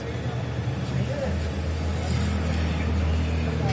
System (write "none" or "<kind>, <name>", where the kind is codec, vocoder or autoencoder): none